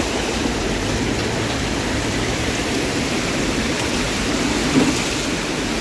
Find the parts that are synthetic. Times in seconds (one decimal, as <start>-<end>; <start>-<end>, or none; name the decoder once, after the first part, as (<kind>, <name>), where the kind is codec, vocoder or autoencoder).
1.2-4.5 (vocoder, BigVGAN v2)